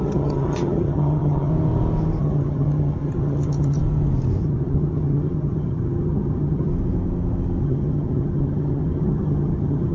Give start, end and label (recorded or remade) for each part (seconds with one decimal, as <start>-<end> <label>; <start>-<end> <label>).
0.0-1.5 remade; 1.5-2.2 recorded; 2.2-3.8 remade; 3.8-4.4 recorded; 4.4-6.7 remade; 6.7-7.6 recorded; 7.6-9.9 remade